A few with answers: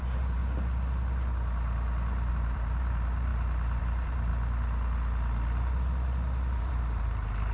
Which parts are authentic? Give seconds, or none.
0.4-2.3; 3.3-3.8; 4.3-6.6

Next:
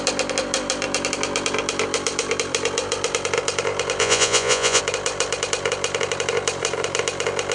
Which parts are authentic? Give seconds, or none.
0.0-4.0; 4.8-7.5